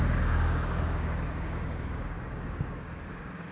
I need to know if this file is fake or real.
fake